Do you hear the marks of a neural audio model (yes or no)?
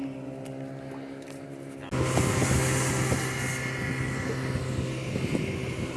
no